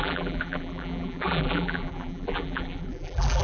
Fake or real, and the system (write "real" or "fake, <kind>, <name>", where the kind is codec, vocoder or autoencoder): fake, vocoder, BigVGAN v2